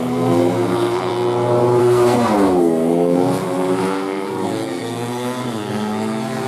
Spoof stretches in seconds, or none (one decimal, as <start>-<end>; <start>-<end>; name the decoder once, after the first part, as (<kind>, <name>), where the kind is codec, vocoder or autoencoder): 0.0-1.1 (codec, SNAC); 1.8-6.5